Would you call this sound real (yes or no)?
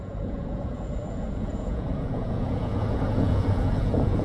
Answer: no